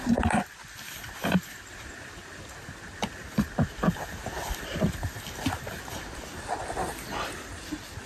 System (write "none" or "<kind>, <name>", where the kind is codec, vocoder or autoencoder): none